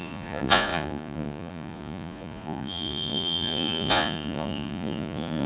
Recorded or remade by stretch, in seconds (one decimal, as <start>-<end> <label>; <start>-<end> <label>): 0.0-5.5 remade